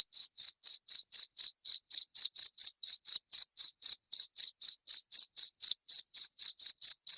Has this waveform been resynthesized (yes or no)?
no